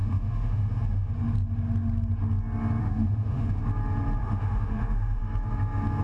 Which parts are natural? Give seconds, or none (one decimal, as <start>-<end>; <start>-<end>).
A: 1.1-2.8; 3.6-4.2; 5.2-6.0